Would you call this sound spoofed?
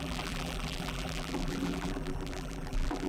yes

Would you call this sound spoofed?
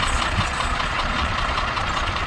yes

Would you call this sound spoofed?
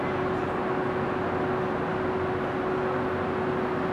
no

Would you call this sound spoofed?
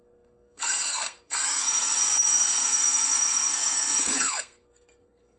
yes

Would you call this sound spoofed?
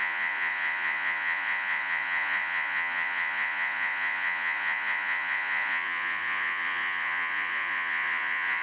yes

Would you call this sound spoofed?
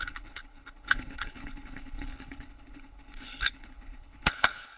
yes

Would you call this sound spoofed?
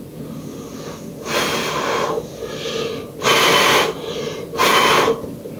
no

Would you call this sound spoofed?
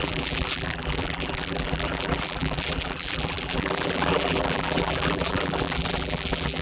yes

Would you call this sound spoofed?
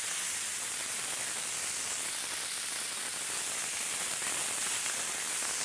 yes